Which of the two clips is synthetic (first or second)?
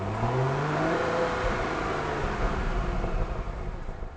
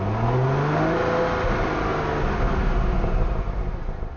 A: first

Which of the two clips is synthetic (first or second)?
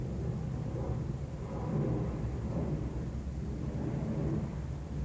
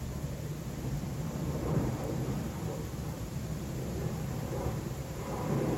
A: second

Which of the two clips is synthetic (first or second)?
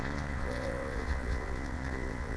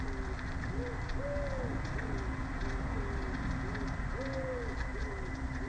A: first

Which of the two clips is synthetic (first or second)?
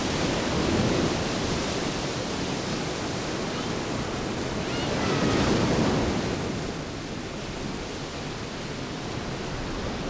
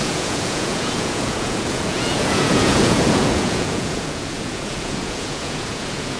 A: second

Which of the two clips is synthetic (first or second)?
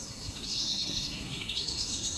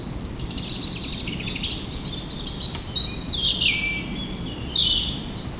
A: first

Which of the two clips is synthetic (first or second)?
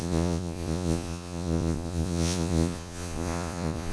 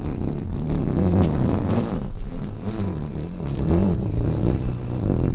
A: first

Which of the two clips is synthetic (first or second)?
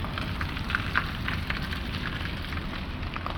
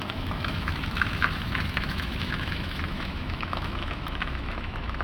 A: second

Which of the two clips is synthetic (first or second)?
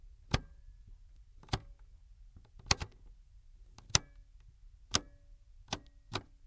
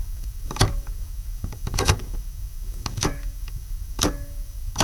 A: second